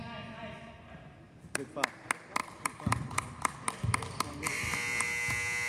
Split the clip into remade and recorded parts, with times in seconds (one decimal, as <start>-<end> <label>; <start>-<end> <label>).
0.0-2.4 recorded; 2.4-3.6 remade; 3.6-5.7 recorded

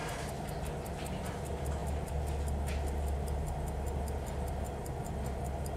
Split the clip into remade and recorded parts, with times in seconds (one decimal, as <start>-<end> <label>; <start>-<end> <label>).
0.0-5.8 recorded

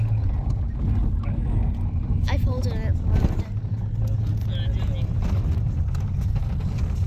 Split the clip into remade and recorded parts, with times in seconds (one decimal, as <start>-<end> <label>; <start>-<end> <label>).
0.0-7.1 recorded

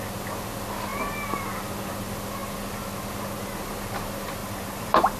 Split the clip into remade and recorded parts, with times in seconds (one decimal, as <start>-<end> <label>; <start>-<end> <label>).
0.0-4.4 recorded; 4.4-5.2 remade

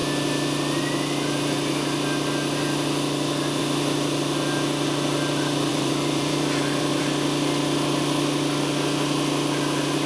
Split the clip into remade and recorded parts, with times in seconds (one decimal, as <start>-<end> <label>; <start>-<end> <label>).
0.0-5.7 recorded; 5.7-7.0 remade; 7.0-10.1 recorded

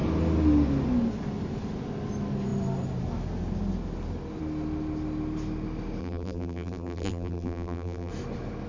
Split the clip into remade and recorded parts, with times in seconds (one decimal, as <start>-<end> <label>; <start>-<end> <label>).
0.0-6.0 recorded; 6.0-8.1 remade; 8.1-8.7 recorded

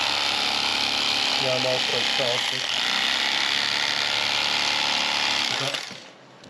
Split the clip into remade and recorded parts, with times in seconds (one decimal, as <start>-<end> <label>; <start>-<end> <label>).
0.0-6.5 recorded

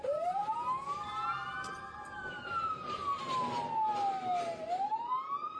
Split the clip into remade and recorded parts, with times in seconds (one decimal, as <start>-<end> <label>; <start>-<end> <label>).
0.0-0.4 remade; 0.4-2.2 recorded; 2.2-3.1 remade; 3.1-4.7 recorded; 4.7-5.6 remade